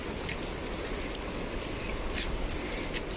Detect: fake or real real